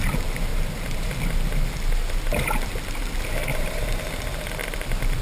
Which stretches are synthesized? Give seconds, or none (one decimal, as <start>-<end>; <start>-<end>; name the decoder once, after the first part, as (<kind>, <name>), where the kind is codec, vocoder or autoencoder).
0.5-1.1 (vocoder, BigVGAN v2); 3.5-4.0